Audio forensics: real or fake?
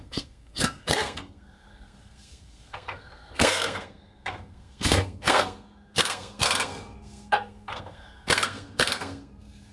fake